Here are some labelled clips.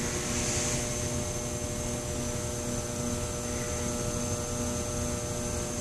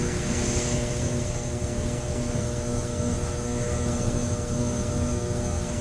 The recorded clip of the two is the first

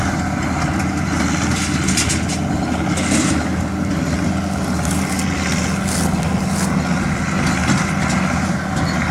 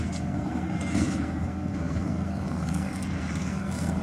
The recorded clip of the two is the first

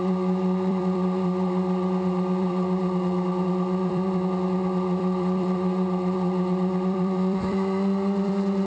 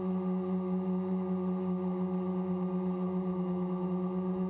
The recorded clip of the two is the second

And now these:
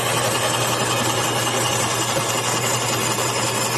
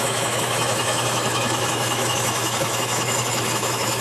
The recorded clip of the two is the first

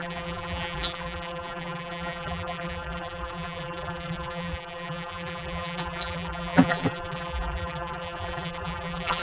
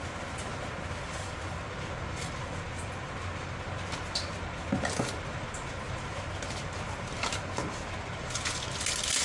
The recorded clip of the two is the second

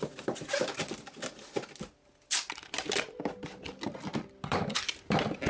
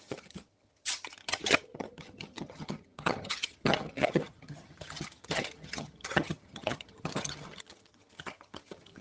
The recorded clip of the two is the first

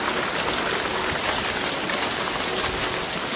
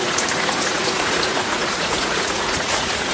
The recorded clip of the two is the first